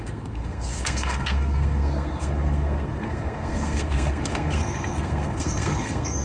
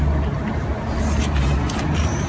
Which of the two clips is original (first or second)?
second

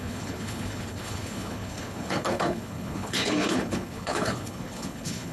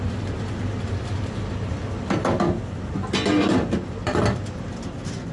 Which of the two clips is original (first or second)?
second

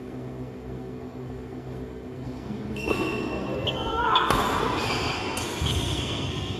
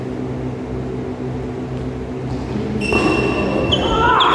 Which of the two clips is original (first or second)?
second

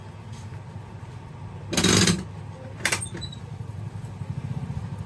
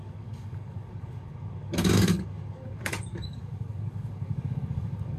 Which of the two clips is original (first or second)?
first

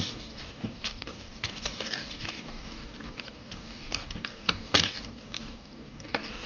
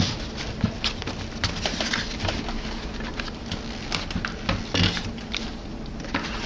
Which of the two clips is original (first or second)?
second